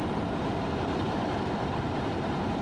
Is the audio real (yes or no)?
no